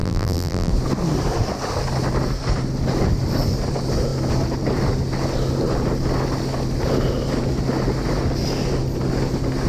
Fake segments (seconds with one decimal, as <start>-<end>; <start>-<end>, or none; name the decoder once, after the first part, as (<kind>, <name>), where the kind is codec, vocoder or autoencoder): 0.0-0.7 (vocoder, BigVGAN v2)